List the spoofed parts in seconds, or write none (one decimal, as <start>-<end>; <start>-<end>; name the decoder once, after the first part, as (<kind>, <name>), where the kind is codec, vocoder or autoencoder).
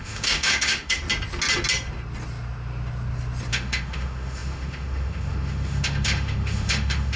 0.0-1.0 (autoencoder, DAC-VAE); 3.5-7.2